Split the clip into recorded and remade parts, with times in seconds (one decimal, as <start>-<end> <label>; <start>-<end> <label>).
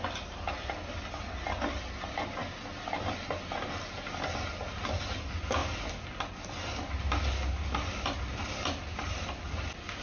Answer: 0.0-10.0 recorded